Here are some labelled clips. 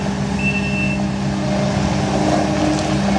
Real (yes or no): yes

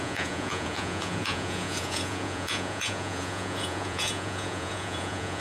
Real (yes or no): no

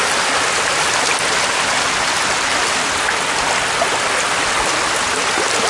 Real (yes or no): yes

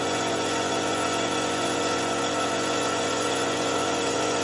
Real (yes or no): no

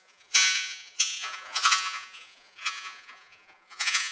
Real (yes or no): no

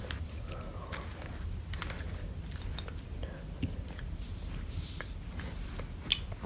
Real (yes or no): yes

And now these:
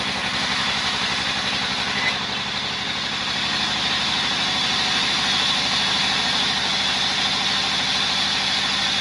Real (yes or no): yes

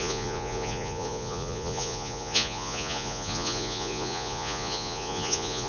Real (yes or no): no